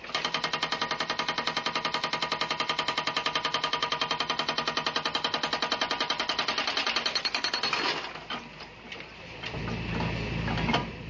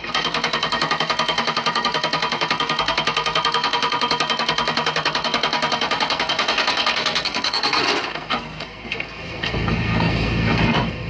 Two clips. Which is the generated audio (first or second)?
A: second